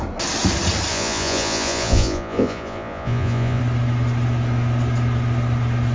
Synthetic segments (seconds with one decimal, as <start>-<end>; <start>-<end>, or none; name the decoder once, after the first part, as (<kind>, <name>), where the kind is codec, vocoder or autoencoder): 0.9-3.6 (vocoder, Vocos)